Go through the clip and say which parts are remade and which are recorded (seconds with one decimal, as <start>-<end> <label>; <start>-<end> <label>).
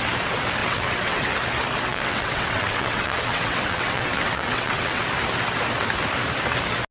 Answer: 0.0-0.6 recorded; 0.6-1.3 remade; 1.3-1.9 recorded; 1.9-5.0 remade; 5.0-6.9 recorded